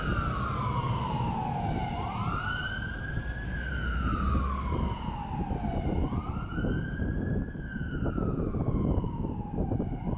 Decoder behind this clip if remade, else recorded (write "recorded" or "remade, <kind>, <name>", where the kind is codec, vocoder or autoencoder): remade, vocoder, BigVGAN v2